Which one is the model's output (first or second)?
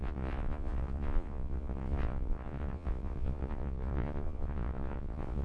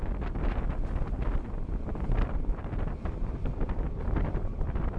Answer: first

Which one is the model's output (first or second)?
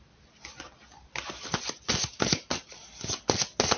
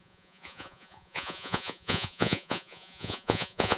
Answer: second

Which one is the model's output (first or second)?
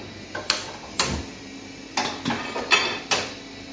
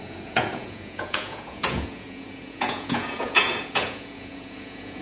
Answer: second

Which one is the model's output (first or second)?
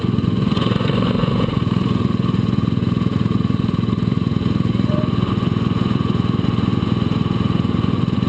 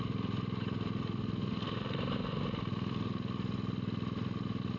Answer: first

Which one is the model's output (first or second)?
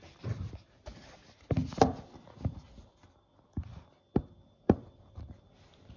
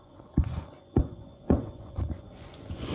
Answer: second